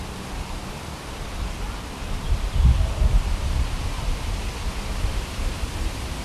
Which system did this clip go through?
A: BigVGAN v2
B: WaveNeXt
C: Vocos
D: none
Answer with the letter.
A